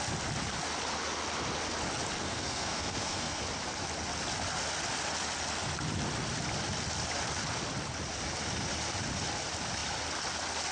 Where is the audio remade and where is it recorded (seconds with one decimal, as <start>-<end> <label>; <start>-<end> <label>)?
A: 0.0-2.2 recorded; 2.2-3.4 remade; 3.4-10.7 recorded